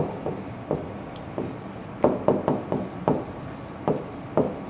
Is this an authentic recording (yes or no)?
yes